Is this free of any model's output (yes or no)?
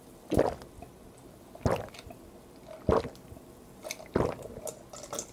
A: yes